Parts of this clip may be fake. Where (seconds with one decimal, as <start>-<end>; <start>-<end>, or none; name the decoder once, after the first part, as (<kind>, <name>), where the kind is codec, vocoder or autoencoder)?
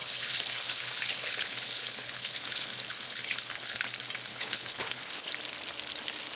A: 0.0-3.8 (codec, HILCodec); 4.3-5.3